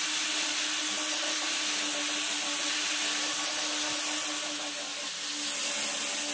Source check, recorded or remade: recorded